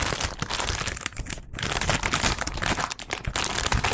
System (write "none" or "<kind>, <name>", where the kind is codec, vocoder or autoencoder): none